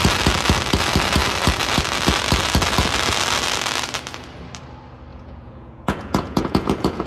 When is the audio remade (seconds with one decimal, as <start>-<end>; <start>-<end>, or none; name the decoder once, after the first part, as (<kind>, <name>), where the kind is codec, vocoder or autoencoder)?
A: 5.1-7.1 (vocoder, Vocos)